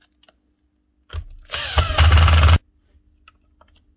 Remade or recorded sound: recorded